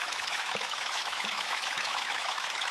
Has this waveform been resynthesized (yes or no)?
yes